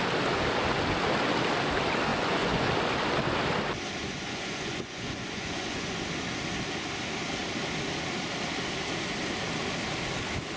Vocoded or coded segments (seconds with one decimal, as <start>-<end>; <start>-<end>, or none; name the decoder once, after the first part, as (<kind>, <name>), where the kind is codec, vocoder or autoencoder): 2.1-2.7 (vocoder, Vocos); 4.0-6.0